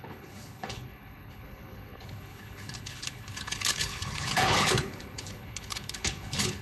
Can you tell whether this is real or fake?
fake